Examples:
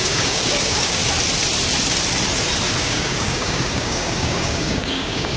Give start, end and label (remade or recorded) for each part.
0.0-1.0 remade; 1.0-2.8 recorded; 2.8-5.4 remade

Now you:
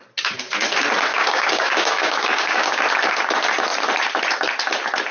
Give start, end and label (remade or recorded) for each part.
0.0-1.1 recorded; 1.1-2.8 remade; 2.8-5.1 recorded